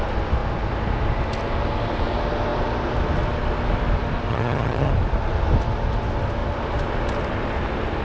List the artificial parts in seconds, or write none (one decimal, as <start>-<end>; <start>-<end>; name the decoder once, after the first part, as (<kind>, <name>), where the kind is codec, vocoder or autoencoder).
4.3-4.9 (vocoder, HiFi-GAN)